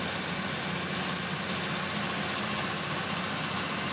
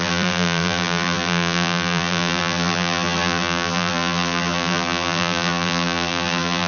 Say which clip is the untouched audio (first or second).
first